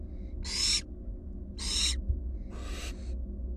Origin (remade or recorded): recorded